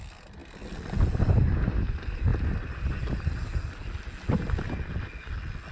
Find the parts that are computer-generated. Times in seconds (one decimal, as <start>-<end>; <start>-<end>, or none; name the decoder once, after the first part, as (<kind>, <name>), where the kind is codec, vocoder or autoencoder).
none